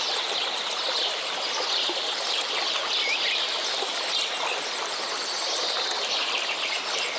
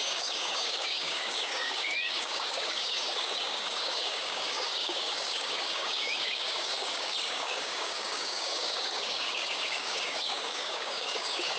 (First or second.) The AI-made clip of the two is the second